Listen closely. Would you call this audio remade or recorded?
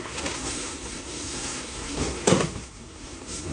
remade